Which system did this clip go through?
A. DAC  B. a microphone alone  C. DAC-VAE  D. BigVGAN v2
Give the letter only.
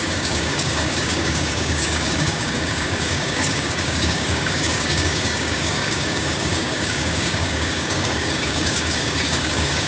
A